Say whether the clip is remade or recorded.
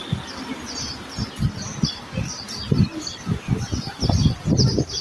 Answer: recorded